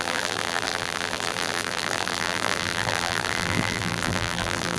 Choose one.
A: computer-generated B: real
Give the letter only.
A